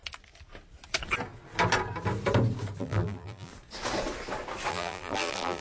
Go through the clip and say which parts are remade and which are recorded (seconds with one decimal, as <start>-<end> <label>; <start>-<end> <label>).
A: 0.0-2.8 recorded; 2.8-3.5 remade; 3.5-4.7 recorded; 4.7-5.6 remade